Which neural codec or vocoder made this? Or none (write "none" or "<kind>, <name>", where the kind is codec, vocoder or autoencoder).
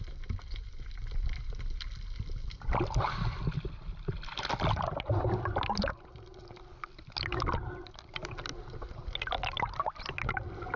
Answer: none